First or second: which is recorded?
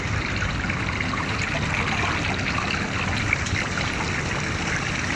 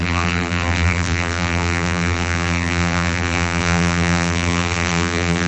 first